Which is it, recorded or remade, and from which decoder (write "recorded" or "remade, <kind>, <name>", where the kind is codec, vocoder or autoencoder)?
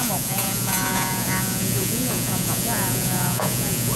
remade, vocoder, Vocos